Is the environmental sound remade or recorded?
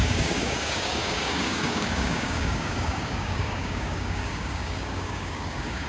remade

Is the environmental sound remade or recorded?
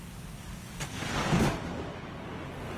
remade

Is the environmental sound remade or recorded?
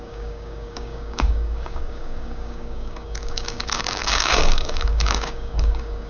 remade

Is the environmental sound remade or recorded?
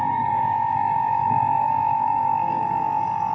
remade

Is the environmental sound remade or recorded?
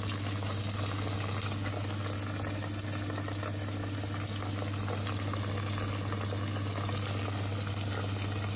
recorded